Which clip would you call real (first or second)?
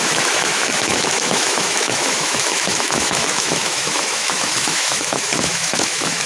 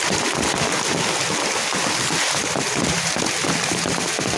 second